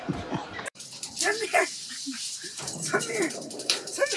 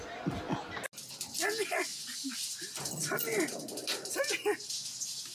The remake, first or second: first